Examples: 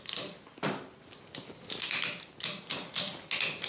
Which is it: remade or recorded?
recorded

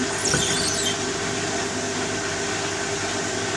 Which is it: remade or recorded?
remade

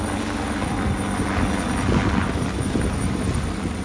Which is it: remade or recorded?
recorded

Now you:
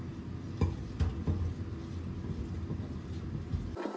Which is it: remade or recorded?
recorded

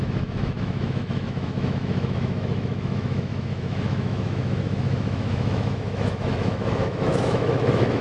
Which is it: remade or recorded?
remade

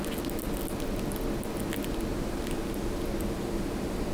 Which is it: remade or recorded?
recorded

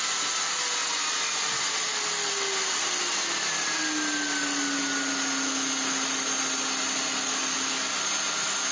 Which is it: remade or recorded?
recorded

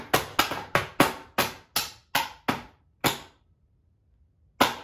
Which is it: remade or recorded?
recorded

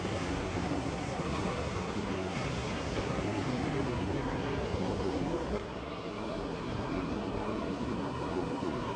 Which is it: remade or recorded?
remade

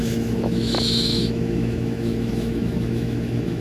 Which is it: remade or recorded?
remade